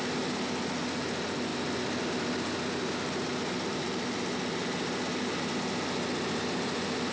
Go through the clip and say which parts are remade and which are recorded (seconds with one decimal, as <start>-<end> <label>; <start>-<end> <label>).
0.0-7.1 recorded